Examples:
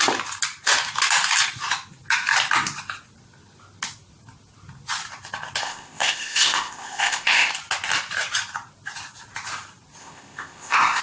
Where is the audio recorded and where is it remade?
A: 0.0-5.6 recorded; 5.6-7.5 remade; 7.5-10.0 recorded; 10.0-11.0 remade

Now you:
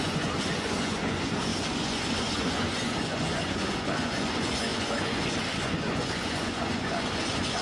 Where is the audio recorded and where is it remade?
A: 0.0-7.6 remade

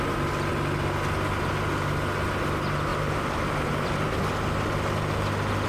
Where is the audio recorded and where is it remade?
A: 0.0-5.7 recorded

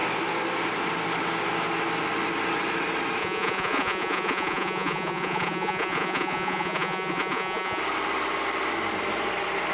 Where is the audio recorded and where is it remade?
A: 0.0-3.2 recorded; 3.2-7.8 remade; 7.8-9.7 recorded

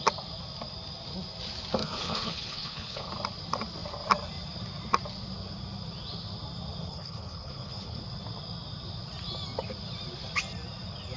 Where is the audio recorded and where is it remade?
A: 0.0-1.8 recorded; 1.8-3.1 remade; 3.1-6.8 recorded; 6.8-8.0 remade; 8.0-11.2 recorded

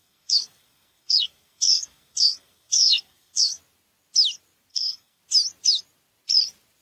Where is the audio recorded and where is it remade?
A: 0.0-3.6 remade; 3.6-4.7 recorded; 4.7-5.2 remade; 5.2-6.8 recorded

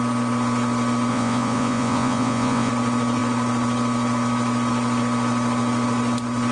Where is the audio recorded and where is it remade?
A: 0.0-1.1 recorded; 1.1-2.7 remade; 2.7-6.5 recorded